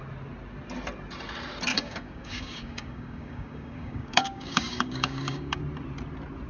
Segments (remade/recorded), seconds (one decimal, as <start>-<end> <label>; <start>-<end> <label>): 0.0-1.7 recorded; 1.7-5.6 remade; 5.6-6.5 recorded